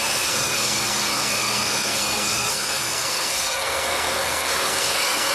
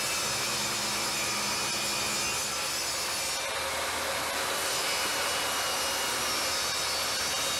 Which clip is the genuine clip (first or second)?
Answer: second